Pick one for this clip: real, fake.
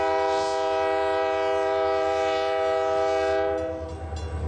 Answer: real